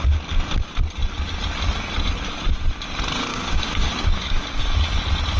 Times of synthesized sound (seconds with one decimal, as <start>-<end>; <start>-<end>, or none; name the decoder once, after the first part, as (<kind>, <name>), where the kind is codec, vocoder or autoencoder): 3.3-4.6 (codec, DAC)